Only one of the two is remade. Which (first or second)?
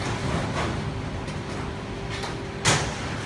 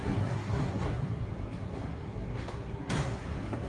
second